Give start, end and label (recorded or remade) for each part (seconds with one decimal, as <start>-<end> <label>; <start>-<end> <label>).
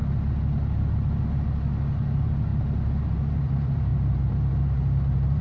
0.0-2.1 recorded; 2.1-5.4 remade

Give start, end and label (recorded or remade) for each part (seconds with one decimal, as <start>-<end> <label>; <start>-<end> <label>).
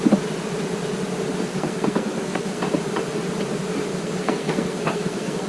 0.0-1.5 recorded; 1.5-2.6 remade; 2.6-3.9 recorded; 3.9-5.5 remade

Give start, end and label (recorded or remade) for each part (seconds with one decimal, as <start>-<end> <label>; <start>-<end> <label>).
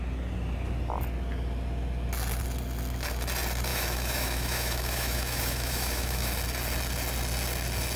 0.0-3.7 recorded; 3.7-6.3 remade; 6.3-8.0 recorded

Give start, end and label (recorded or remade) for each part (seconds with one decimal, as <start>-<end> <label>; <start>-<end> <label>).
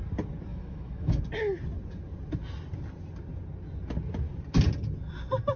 0.0-0.5 recorded; 0.5-1.2 remade; 1.2-5.6 recorded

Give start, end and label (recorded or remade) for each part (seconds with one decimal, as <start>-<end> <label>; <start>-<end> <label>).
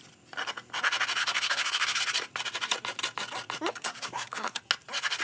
0.0-1.2 recorded; 1.2-2.0 remade; 2.0-3.7 recorded; 3.7-4.6 remade; 4.6-5.2 recorded